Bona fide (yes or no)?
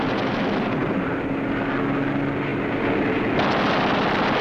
yes